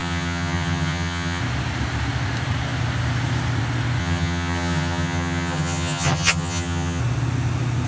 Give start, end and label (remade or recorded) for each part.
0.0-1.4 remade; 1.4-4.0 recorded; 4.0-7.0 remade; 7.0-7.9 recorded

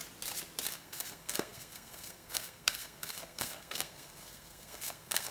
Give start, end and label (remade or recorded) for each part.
0.0-0.7 recorded; 0.7-5.3 remade